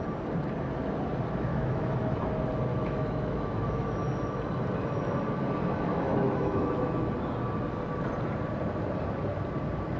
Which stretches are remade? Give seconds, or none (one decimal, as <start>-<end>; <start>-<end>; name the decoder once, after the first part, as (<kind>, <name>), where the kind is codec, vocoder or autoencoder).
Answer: 1.5-2.3 (autoencoder, DAC-VAE); 2.7-4.0; 5.9-6.7